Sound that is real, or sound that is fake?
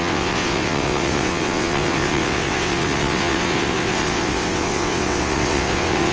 fake